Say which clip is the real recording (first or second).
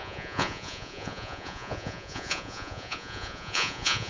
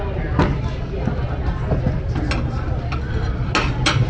second